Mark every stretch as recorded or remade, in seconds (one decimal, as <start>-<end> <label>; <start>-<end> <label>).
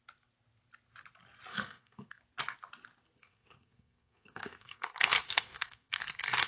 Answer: 0.0-1.5 recorded; 1.5-2.2 remade; 2.2-3.2 recorded; 3.2-6.5 remade